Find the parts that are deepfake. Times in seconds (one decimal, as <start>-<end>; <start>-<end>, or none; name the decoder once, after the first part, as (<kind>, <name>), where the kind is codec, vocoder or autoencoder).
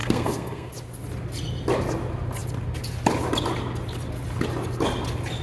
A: 0.0-0.7 (codec, SNAC)